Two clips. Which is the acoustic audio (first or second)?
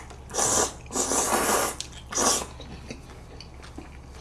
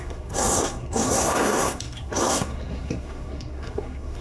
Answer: first